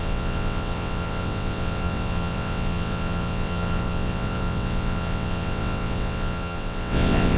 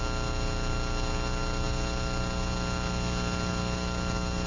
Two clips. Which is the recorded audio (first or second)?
second